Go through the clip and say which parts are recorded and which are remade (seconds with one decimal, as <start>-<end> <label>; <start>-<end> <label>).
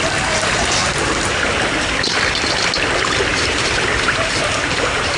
0.0-0.8 recorded; 0.8-1.5 remade; 1.5-3.3 recorded; 3.3-5.2 remade